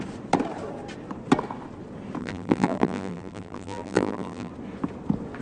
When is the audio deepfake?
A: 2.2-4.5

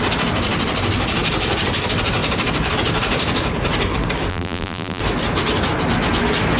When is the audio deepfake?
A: 4.3-5.0

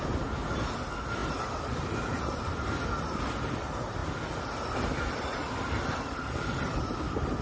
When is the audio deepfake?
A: 1.2-2.5; 4.0-6.7

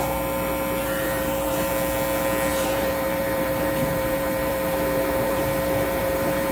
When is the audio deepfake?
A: 0.8-1.7; 2.5-6.5

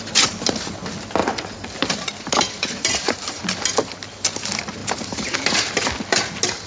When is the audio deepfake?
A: 1.2-3.4; 4.8-6.0